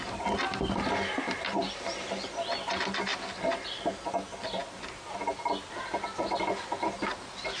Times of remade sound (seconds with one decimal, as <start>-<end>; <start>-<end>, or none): none